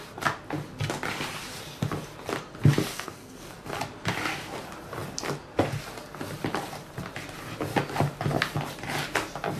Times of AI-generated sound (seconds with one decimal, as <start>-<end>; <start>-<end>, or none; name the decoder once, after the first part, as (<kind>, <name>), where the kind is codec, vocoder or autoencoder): 2.9-3.5 (codec, SNAC)